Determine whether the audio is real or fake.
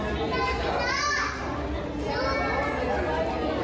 real